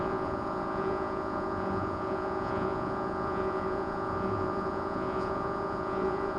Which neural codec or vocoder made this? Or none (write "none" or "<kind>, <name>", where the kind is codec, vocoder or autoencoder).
vocoder, Vocos